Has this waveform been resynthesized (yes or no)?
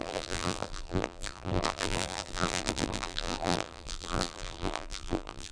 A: yes